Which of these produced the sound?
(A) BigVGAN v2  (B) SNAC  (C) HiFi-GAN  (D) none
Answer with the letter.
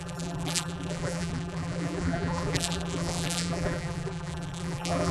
A